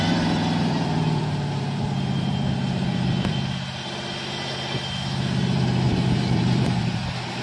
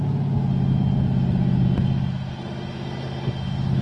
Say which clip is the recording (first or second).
second